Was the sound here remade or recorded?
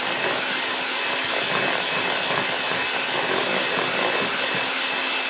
recorded